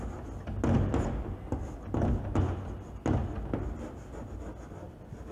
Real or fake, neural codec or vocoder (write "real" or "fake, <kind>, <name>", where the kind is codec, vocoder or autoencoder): real